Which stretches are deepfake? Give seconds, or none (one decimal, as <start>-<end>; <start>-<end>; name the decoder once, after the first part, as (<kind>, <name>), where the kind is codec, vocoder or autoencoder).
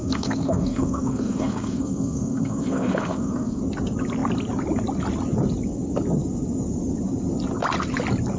0.0-3.6 (codec, SNAC)